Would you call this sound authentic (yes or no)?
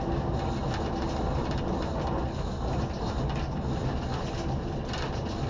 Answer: yes